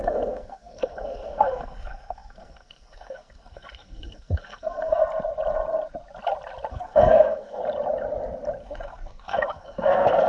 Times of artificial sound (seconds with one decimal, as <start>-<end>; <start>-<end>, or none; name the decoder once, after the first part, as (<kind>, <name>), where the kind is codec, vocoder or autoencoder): 0.0-5.0 (codec, SNAC); 6.7-7.6; 8.6-10.3